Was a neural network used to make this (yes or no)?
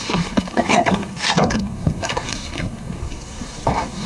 yes